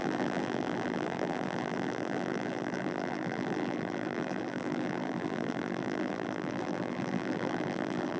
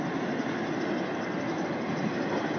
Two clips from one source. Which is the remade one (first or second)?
first